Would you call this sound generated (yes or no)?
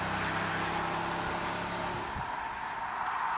no